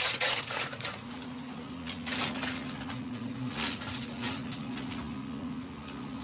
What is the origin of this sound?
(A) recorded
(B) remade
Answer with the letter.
B